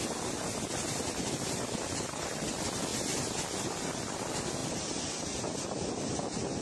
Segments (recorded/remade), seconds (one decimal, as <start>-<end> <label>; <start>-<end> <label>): 0.0-6.6 recorded

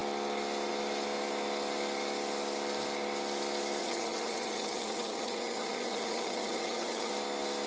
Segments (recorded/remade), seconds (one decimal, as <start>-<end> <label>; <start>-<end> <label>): 0.0-3.8 recorded; 3.8-7.1 remade; 7.1-7.7 recorded

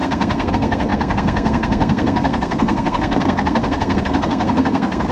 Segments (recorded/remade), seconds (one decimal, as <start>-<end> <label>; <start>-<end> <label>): 0.0-5.1 remade

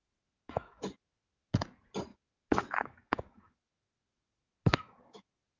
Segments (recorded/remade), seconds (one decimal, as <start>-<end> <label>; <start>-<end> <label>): 0.0-1.5 remade; 1.5-2.1 recorded; 2.1-5.6 remade

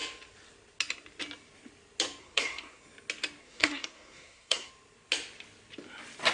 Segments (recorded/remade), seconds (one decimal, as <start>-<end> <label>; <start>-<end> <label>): 0.0-2.2 recorded; 2.2-2.8 remade; 2.8-3.4 recorded; 3.4-4.7 remade; 4.7-6.3 recorded

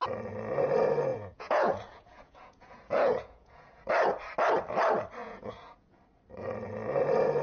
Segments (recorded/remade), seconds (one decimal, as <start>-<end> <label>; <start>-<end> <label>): 0.0-1.1 recorded; 1.1-3.9 remade; 3.9-5.2 recorded; 5.2-6.0 remade; 6.0-7.4 recorded

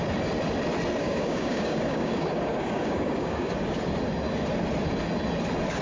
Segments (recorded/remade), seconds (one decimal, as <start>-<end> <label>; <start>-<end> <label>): 0.0-1.0 recorded; 1.0-3.5 remade; 3.5-5.8 recorded